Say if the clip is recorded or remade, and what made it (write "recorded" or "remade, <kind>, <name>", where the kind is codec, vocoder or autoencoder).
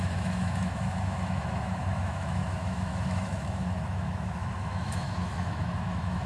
remade, autoencoder, DAC-VAE